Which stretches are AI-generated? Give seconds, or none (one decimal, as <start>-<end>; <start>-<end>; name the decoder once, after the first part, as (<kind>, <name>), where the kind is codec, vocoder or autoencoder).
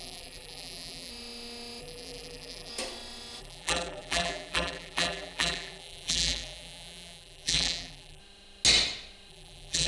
0.0-1.1 (vocoder, BigVGAN v2); 1.8-2.7; 3.4-8.2; 9.3-9.9